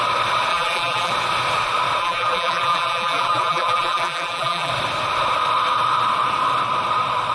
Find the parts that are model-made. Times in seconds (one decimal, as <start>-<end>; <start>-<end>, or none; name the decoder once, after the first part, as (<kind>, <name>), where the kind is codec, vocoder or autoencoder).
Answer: 0.5-1.1 (vocoder, BigVGAN v2); 2.0-4.7